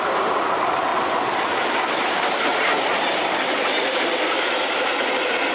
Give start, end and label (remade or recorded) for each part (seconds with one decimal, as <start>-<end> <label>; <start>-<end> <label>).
0.0-0.9 remade; 0.9-4.2 recorded; 4.2-5.5 remade